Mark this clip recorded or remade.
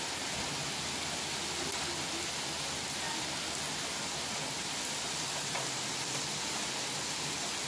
recorded